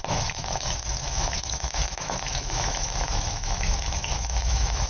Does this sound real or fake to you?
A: fake